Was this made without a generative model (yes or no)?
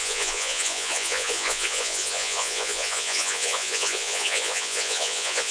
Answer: no